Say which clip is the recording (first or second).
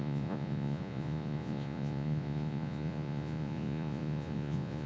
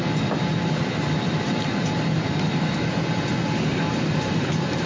second